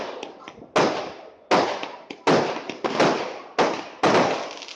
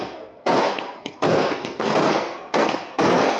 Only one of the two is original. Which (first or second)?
first